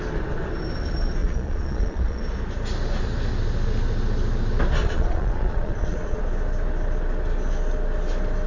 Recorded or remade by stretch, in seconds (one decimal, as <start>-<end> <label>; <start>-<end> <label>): 0.0-1.2 recorded; 1.2-2.2 remade; 2.2-4.8 recorded; 4.8-6.2 remade; 6.2-8.5 recorded